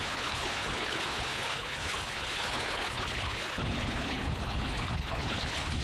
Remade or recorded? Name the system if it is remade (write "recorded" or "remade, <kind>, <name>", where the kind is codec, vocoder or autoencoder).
remade, codec, HILCodec